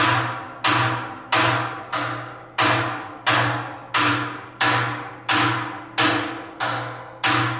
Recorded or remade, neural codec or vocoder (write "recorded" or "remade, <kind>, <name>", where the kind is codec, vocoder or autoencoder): recorded